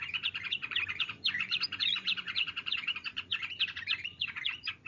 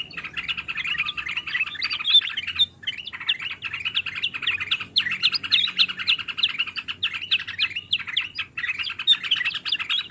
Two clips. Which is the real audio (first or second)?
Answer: second